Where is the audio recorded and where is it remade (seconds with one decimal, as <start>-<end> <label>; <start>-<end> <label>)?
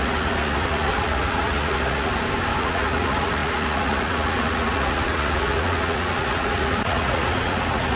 0.0-2.1 remade; 2.1-2.6 recorded; 2.6-8.0 remade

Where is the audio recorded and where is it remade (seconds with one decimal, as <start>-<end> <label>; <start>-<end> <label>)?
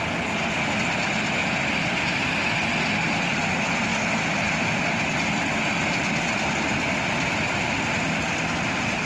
0.0-9.1 recorded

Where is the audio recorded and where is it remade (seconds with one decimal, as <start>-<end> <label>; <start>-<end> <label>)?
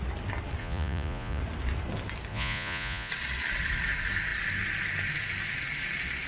0.0-0.6 recorded; 0.6-1.4 remade; 1.4-2.3 recorded; 2.3-3.1 remade; 3.1-6.3 recorded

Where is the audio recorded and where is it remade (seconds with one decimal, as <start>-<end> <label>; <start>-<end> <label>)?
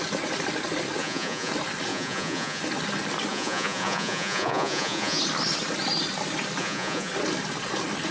0.0-1.0 recorded; 1.0-1.5 remade; 1.5-1.9 recorded; 1.9-2.6 remade; 2.6-3.3 recorded; 3.3-5.2 remade; 5.2-6.6 recorded; 6.6-7.1 remade; 7.1-8.1 recorded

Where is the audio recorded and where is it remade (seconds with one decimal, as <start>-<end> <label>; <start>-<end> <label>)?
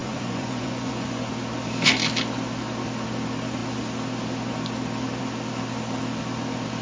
0.0-1.3 remade; 1.3-6.8 recorded